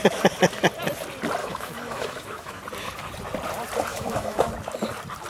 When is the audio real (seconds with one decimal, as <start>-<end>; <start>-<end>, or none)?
0.0-1.4; 2.6-3.9; 4.5-5.3

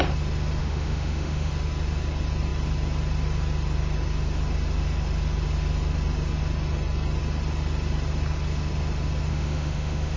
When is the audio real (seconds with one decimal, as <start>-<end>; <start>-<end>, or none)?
0.0-0.6; 1.5-9.3

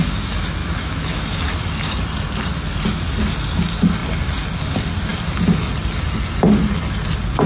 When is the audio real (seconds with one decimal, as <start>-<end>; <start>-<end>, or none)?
0.0-0.6; 1.4-7.5

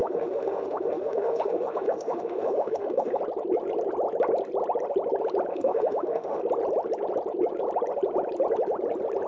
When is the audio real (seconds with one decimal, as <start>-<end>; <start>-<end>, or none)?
3.2-5.5; 6.4-9.3

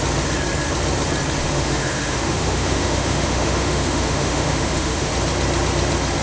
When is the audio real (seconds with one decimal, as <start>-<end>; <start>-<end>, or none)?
0.0-1.4; 5.1-6.2

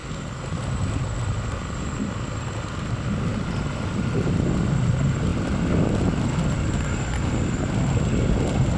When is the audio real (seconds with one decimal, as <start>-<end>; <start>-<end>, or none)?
0.0-8.8